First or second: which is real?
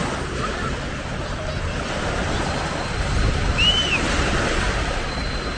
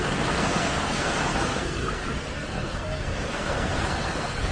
first